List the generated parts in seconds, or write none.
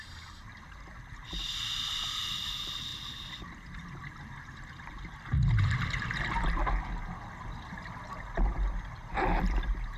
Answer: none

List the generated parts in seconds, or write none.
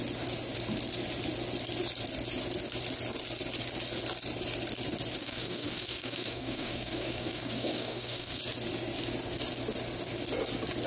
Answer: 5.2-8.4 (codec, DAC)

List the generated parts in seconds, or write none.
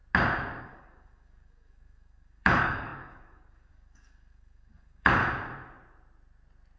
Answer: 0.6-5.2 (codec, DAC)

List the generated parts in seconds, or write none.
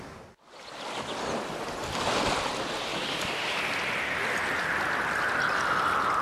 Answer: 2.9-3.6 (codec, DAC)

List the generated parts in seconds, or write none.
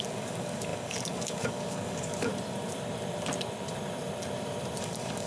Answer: 0.0-2.3 (codec, DAC); 4.8-5.3